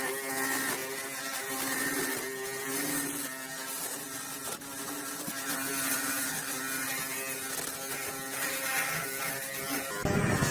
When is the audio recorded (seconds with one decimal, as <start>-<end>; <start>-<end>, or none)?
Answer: 0.0-10.5